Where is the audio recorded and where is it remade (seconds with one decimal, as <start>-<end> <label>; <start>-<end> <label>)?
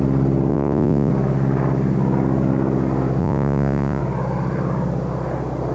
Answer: 0.0-0.5 recorded; 0.5-1.1 remade; 1.1-3.2 recorded; 3.2-4.0 remade; 4.0-5.7 recorded